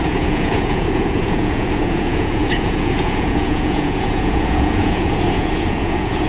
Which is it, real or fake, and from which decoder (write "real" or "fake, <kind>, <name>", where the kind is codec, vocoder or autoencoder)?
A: fake, vocoder, Vocos